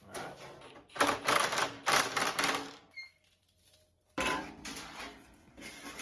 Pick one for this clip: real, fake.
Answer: fake